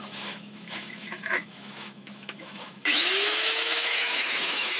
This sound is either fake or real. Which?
fake